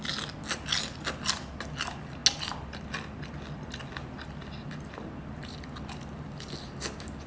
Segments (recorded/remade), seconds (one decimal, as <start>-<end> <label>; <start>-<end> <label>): 0.0-7.3 recorded